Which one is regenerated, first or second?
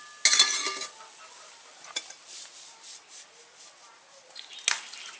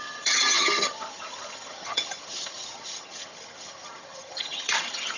second